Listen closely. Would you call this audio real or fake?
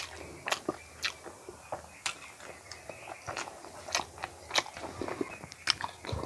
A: real